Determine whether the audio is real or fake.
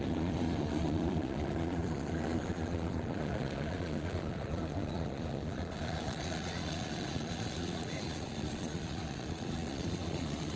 fake